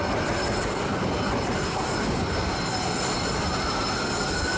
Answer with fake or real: real